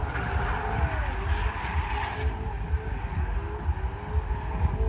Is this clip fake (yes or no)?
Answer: no